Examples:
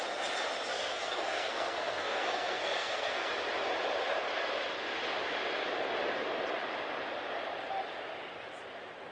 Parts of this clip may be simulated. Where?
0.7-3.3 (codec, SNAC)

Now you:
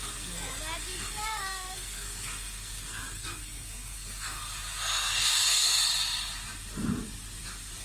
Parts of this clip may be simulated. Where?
0.0-5.8 (codec, SNAC)